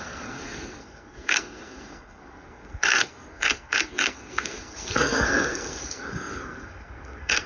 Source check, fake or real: fake